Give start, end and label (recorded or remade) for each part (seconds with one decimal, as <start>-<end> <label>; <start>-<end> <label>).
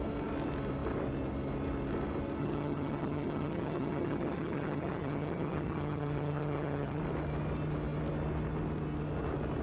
0.0-2.4 recorded; 2.4-7.0 remade; 7.0-9.6 recorded